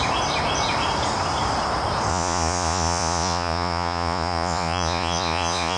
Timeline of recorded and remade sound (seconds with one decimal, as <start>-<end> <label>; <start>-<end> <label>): 0.0-2.1 recorded; 2.1-5.8 remade